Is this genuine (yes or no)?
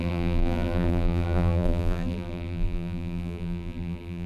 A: no